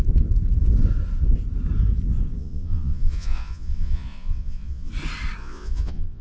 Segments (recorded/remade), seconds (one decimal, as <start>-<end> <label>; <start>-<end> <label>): 0.0-2.4 recorded; 2.4-4.9 remade; 4.9-5.4 recorded; 5.4-6.2 remade